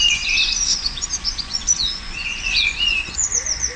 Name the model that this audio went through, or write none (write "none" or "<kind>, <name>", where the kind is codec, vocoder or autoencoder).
vocoder, Vocos